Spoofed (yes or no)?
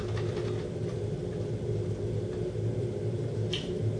no